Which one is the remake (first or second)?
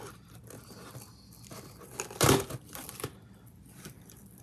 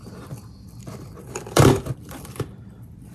second